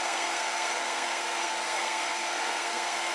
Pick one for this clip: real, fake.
fake